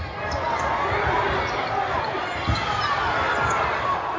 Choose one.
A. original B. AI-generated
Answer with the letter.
A